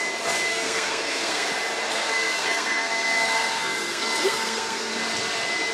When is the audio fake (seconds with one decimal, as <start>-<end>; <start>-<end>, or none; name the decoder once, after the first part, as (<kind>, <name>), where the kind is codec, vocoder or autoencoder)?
0.5-1.5 (codec, SNAC); 1.9-4.9